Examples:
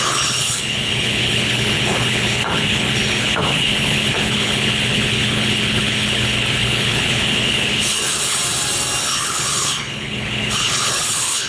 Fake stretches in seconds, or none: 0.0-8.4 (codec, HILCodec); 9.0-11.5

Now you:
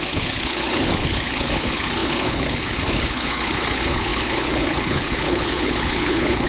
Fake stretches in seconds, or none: 0.0-6.5 (codec, HILCodec)

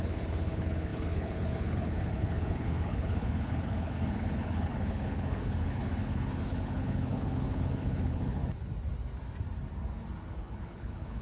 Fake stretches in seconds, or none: 0.0-8.4 (codec, HILCodec); 10.3-11.2

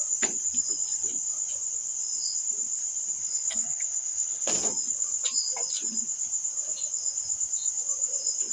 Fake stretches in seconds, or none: 3.2-4.5 (codec, HILCodec)

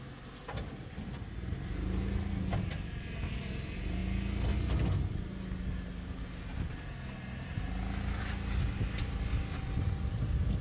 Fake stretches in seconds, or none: none